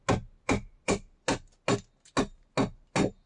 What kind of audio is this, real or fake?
real